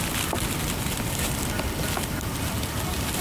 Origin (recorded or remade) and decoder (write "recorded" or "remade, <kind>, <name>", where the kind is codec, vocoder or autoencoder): recorded